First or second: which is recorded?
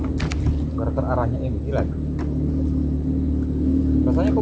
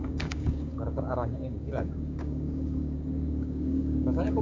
first